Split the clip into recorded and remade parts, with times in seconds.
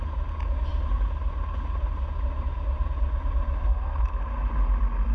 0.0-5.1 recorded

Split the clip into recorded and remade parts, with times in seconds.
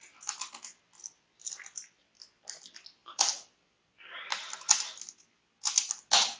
0.0-3.0 recorded; 3.0-3.8 remade; 3.8-6.4 recorded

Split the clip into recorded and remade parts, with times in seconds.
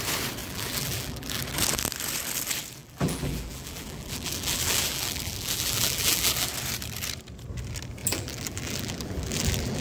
0.0-0.4 recorded; 0.4-1.4 remade; 1.4-2.8 recorded; 2.8-6.5 remade; 6.5-8.0 recorded; 8.0-9.8 remade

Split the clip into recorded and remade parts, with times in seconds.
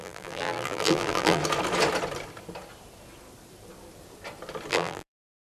0.0-1.4 remade; 1.4-4.7 recorded; 4.7-5.5 remade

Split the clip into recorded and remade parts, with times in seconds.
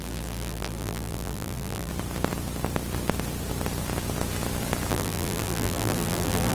0.0-1.9 remade; 1.9-4.9 recorded; 4.9-6.5 remade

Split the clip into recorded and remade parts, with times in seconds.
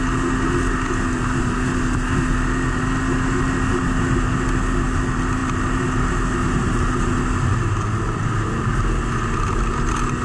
0.0-10.2 recorded